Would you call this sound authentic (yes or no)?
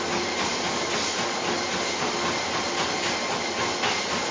yes